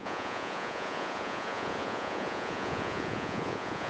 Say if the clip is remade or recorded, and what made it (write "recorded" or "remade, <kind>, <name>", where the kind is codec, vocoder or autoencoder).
remade, vocoder, Vocos